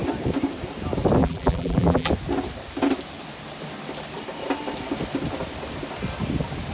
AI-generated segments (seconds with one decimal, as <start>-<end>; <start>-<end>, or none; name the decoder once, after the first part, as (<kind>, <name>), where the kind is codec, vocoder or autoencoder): 1.2-2.1 (vocoder, BigVGAN v2)